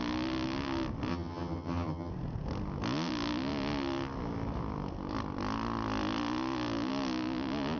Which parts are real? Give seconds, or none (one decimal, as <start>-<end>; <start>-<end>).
0.0-1.1; 2.1-7.8